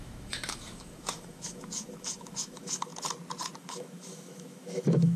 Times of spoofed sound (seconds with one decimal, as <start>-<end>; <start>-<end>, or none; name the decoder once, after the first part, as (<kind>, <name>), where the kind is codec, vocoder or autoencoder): 0.0-2.9 (autoencoder, DAC-VAE); 3.6-5.2